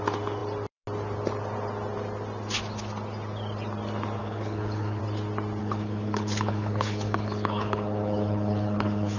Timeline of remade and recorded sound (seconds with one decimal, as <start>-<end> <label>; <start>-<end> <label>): 0.0-4.2 recorded; 4.2-5.0 remade; 5.0-5.6 recorded; 5.6-9.2 remade